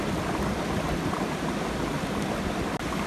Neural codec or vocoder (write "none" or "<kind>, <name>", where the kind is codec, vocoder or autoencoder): none